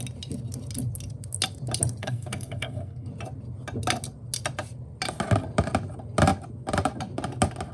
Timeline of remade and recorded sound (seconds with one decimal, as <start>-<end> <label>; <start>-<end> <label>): 0.0-2.0 recorded; 2.0-3.1 remade; 3.1-7.7 recorded